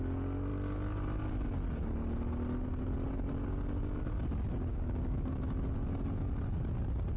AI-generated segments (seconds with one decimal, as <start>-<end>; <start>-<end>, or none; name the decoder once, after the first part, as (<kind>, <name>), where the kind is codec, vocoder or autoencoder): 4.7-5.3 (codec, DAC)